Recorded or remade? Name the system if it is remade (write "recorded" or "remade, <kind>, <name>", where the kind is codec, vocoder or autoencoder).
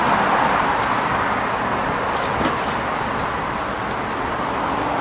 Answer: recorded